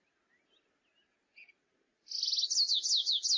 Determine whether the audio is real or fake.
real